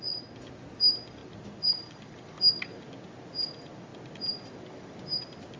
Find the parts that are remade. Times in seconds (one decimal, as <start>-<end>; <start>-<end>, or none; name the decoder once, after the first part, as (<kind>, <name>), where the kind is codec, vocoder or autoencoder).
1.2-2.3 (vocoder, BigVGAN v2); 3.9-4.5